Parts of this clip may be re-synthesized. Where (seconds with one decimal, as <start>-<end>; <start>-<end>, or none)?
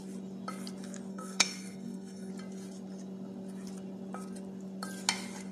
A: 1.1-2.3